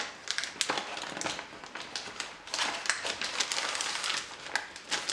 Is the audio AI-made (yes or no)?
no